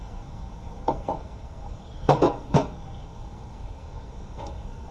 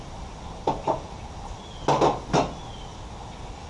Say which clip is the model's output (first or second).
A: first